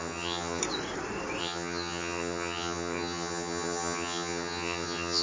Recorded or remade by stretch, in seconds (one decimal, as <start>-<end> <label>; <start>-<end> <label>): 0.0-0.6 remade; 0.6-1.4 recorded; 1.4-5.2 remade